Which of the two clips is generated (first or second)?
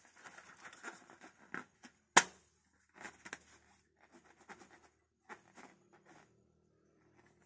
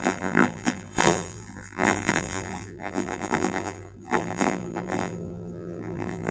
second